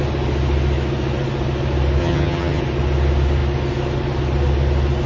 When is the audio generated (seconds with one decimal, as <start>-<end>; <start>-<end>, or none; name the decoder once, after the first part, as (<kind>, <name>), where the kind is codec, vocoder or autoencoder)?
2.0-2.6 (vocoder, HiFi-GAN)